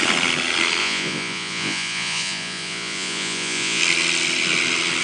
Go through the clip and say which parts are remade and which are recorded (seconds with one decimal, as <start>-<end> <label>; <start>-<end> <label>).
0.0-0.8 recorded; 0.8-3.8 remade; 3.8-5.0 recorded